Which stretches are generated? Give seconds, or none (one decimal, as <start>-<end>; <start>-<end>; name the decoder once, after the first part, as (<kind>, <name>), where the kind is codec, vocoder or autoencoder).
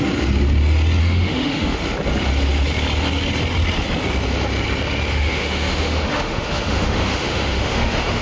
1.0-1.8 (autoencoder, DAC-VAE); 5.1-8.2